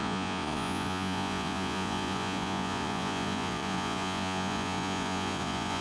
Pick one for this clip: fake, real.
fake